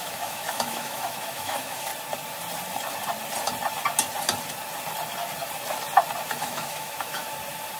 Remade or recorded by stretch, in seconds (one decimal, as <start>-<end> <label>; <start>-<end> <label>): 0.0-1.9 remade; 1.9-6.4 recorded; 6.4-7.2 remade; 7.2-7.8 recorded